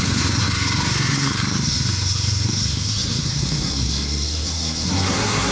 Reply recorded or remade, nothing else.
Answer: remade